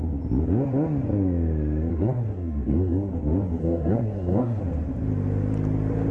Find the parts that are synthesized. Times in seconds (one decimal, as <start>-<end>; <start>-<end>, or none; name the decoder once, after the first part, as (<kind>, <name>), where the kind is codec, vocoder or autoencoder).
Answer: 1.9-3.1 (codec, SNAC); 3.6-4.6